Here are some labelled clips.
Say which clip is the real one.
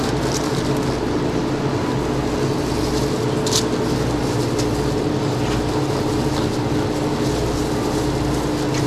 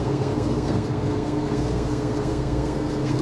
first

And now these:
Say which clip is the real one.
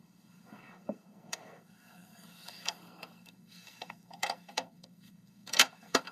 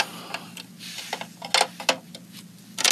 second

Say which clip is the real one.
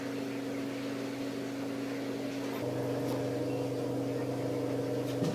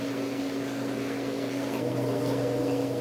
first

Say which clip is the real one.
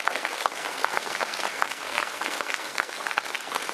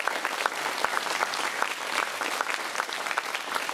second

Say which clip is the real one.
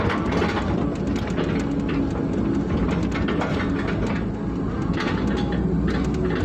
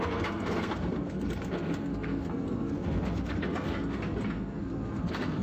first